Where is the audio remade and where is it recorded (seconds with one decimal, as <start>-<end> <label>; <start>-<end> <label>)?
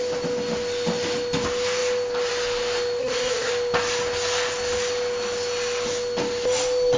0.0-3.0 recorded; 3.0-3.5 remade; 3.5-7.0 recorded